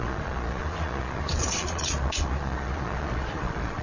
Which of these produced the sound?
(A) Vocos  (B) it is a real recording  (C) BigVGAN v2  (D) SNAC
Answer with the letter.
A